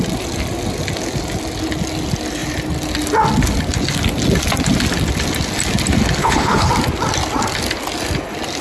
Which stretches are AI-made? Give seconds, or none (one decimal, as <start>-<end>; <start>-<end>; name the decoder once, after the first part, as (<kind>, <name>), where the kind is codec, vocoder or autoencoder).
6.2-6.7 (codec, HILCodec)